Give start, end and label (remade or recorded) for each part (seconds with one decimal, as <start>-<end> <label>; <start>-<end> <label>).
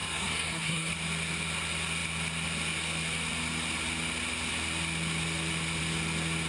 0.0-0.9 remade; 0.9-6.5 recorded